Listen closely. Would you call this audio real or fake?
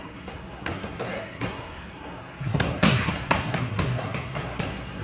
fake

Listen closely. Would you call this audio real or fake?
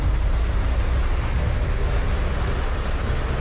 real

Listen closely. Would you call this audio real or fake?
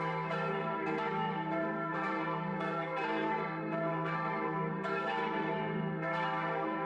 fake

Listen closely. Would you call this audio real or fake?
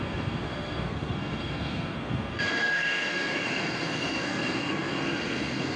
fake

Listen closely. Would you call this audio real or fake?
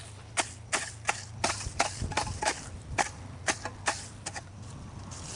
real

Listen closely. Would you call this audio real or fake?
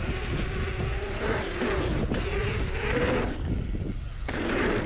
real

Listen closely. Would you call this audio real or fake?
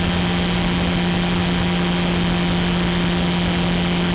real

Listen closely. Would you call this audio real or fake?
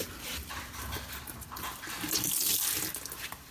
real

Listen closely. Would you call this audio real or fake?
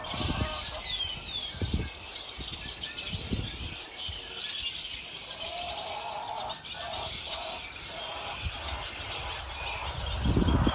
real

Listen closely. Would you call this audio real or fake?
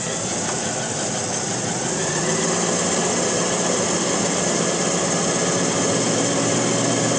real